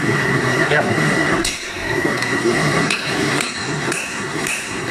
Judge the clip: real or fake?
fake